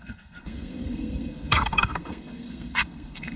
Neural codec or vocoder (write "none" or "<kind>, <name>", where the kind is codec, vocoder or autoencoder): codec, SNAC